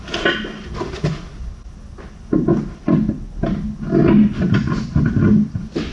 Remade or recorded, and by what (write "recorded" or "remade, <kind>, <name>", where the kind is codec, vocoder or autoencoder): recorded